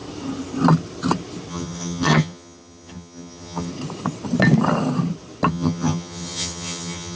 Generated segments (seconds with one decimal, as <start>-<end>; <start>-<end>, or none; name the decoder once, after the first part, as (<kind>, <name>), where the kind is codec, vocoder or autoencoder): 1.5-3.7 (vocoder, HiFi-GAN); 5.5-7.2